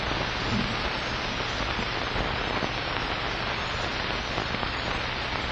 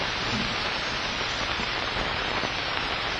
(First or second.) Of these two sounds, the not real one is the second